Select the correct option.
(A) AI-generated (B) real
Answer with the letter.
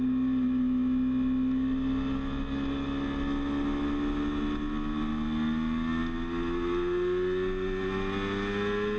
B